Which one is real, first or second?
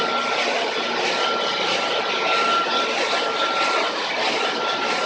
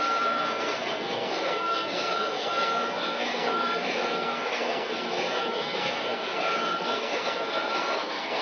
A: first